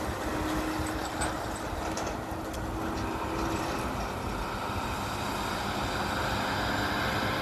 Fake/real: real